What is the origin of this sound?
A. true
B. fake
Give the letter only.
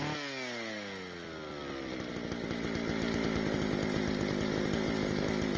A